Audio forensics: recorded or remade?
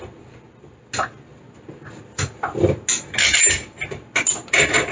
recorded